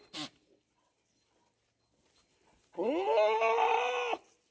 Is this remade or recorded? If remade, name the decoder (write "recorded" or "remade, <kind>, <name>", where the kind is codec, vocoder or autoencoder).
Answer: recorded